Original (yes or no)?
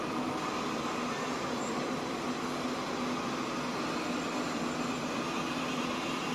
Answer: no